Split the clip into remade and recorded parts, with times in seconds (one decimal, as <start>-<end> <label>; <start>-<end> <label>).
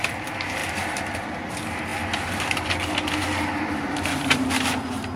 0.0-1.9 recorded; 1.9-3.7 remade; 3.7-5.2 recorded